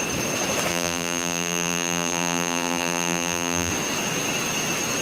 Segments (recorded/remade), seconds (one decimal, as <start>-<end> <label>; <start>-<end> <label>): 0.0-0.7 recorded; 0.7-3.7 remade; 3.7-5.0 recorded